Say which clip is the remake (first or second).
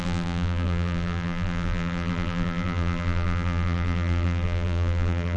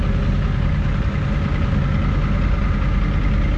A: first